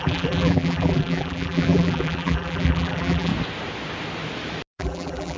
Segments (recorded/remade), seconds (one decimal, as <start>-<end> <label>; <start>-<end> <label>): 0.0-3.3 remade; 3.3-4.8 recorded; 4.8-5.4 remade